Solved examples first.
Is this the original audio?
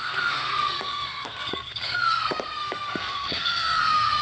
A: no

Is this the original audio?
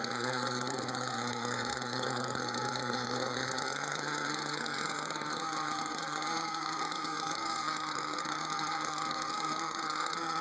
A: no